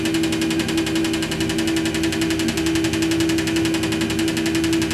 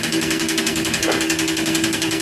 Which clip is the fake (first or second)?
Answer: second